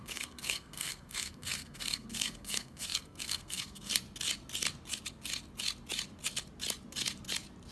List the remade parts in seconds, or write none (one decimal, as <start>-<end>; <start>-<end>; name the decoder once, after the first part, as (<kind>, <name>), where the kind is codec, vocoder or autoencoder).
0.0-3.9 (codec, SNAC)